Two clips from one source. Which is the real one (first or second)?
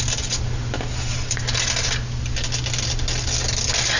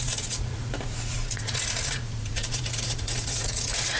first